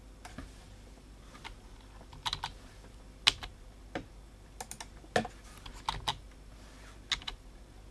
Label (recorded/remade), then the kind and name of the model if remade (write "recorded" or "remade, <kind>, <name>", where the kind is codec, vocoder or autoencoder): recorded